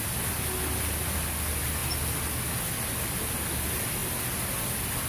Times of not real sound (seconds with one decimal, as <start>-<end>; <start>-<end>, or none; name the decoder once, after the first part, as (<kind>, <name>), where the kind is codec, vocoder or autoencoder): none